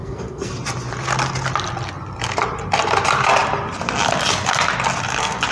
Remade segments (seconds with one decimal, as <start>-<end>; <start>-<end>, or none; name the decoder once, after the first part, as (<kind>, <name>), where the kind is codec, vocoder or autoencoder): 0.0-0.5 (codec, SNAC)